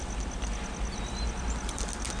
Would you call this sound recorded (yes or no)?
yes